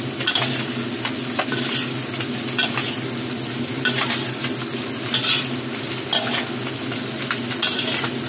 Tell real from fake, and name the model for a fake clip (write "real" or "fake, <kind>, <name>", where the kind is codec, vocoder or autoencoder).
real